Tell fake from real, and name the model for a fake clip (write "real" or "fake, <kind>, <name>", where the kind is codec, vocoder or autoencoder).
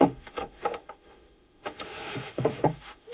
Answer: fake, autoencoder, DAC-VAE